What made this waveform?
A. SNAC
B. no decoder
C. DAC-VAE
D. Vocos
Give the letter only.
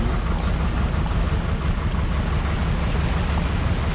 B